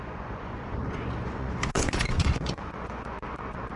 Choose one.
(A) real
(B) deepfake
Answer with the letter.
B